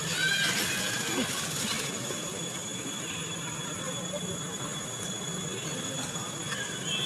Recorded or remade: recorded